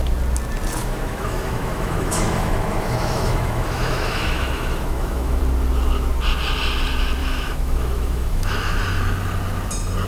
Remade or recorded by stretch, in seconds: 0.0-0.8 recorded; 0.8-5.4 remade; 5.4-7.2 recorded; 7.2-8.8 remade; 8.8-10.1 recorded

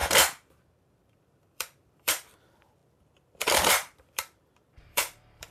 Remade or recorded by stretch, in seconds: 0.0-0.8 recorded; 0.8-5.5 remade

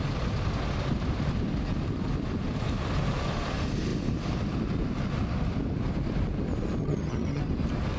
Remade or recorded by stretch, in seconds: 0.0-6.8 recorded; 6.8-7.4 remade; 7.4-8.0 recorded

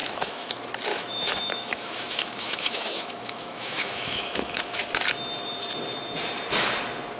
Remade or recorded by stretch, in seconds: 0.0-0.5 remade; 0.5-0.9 recorded; 0.9-4.8 remade; 4.8-7.2 recorded

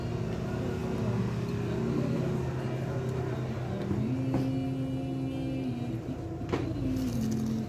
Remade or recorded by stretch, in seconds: 0.0-7.7 recorded

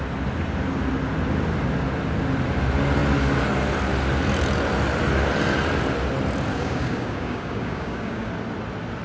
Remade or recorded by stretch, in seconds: 0.0-6.5 recorded; 6.5-8.3 remade; 8.3-9.0 recorded